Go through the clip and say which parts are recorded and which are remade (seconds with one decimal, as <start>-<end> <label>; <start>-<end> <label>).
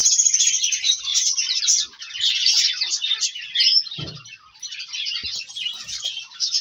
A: 0.0-0.7 recorded; 0.7-3.7 remade; 3.7-5.6 recorded; 5.6-6.6 remade